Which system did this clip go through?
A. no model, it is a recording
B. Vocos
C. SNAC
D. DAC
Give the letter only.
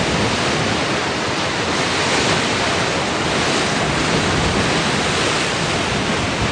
A